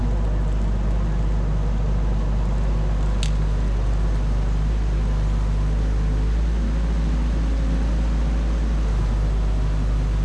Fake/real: real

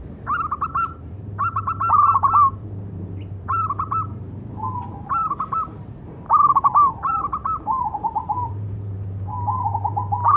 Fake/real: fake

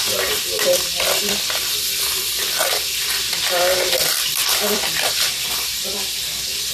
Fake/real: fake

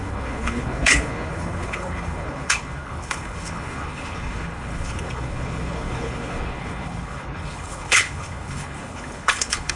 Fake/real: fake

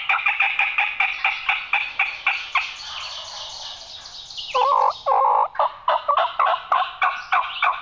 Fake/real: real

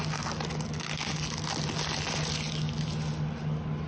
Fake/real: real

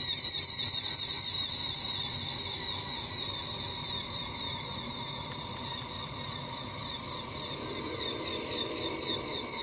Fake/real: fake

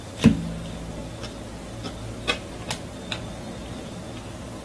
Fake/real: real